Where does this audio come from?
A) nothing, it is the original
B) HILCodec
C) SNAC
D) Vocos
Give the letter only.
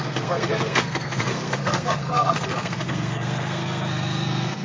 C